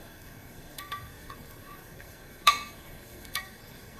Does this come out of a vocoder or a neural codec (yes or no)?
yes